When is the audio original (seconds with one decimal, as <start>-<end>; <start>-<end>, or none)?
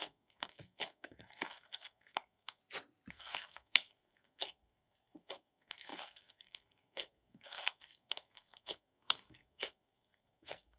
2.6-3.1